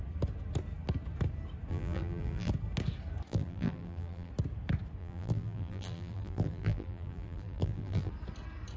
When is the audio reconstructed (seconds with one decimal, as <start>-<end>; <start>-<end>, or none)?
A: 1.7-2.5; 3.3-4.3; 5.0-8.1